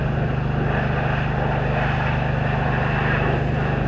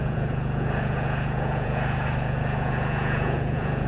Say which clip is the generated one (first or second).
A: second